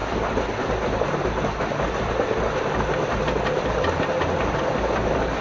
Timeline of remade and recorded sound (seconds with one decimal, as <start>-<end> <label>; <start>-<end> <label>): 0.0-5.4 recorded